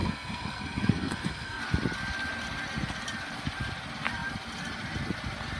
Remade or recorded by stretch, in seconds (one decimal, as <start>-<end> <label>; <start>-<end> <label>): 0.0-1.6 remade; 1.6-5.6 recorded